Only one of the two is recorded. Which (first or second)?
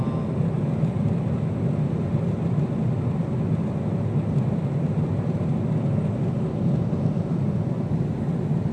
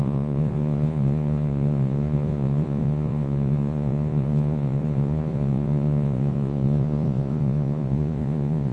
first